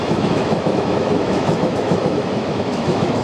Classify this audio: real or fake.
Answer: fake